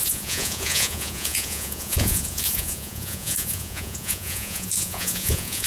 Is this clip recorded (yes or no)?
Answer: no